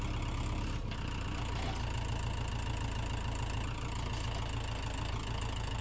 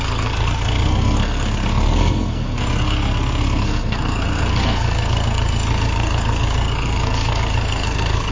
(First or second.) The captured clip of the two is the first